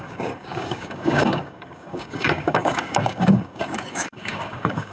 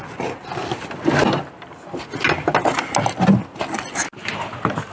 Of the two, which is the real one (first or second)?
second